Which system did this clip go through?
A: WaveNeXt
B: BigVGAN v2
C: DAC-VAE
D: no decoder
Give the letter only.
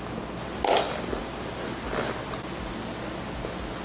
D